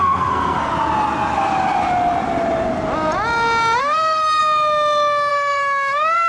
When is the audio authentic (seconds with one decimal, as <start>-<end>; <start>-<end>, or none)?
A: 0.7-3.8; 4.4-5.3